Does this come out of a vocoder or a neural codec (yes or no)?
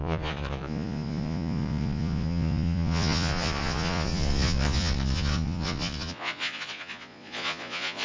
yes